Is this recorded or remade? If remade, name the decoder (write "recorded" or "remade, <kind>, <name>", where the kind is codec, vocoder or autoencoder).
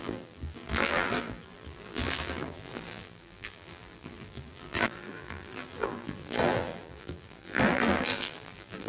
remade, vocoder, BigVGAN v2